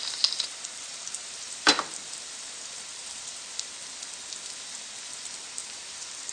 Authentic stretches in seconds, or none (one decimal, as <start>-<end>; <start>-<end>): 3.8-5.4